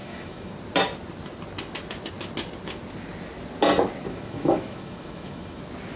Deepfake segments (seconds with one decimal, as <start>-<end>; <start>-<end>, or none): 0.0-0.5; 4.1-5.6